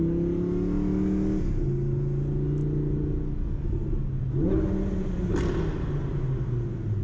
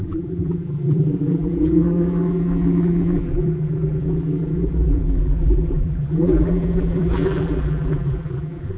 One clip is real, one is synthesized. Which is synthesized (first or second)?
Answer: second